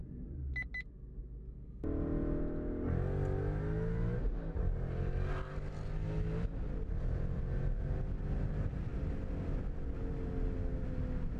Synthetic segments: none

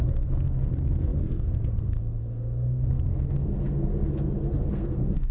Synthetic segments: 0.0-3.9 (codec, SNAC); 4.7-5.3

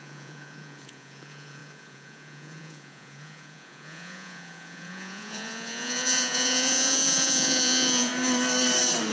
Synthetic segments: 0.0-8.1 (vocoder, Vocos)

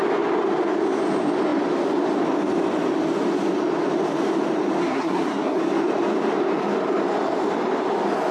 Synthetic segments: 4.8-5.6 (codec, SNAC)